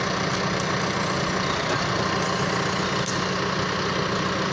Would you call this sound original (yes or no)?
yes